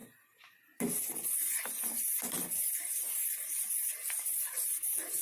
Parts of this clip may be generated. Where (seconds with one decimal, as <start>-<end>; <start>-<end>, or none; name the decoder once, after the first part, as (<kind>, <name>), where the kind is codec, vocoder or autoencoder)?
none